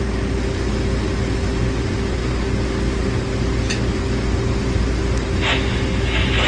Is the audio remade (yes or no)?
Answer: no